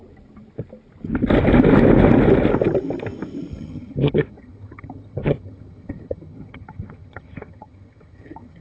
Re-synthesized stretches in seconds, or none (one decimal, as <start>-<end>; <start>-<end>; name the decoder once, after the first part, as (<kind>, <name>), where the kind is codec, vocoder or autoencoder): 3.5-8.6 (vocoder, HiFi-GAN)

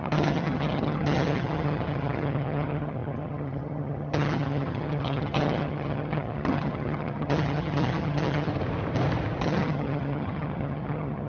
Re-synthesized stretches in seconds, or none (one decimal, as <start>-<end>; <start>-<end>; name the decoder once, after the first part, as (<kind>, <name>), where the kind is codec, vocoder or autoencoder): 0.0-8.5 (vocoder, HiFi-GAN); 9.4-11.3

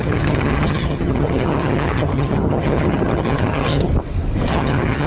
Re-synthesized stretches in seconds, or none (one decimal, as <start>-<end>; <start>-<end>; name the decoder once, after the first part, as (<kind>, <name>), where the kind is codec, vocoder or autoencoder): 0.0-3.9 (vocoder, HiFi-GAN); 4.5-5.1

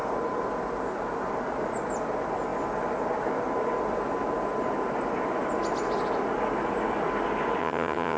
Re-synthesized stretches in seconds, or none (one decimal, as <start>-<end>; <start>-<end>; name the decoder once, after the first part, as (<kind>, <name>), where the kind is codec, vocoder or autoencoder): 7.6-8.2 (vocoder, HiFi-GAN)

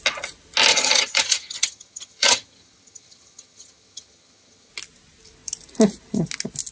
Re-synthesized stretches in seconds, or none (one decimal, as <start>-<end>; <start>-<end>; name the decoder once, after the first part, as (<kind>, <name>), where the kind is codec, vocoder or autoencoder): 0.7-4.7 (vocoder, HiFi-GAN)

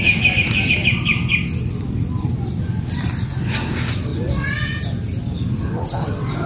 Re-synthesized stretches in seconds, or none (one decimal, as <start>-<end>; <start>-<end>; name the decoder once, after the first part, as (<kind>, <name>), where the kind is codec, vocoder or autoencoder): none

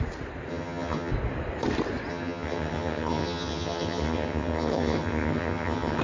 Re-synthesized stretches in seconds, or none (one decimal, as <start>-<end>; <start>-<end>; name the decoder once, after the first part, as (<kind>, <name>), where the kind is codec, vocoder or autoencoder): 0.5-1.1 (vocoder, HiFi-GAN); 2.1-6.0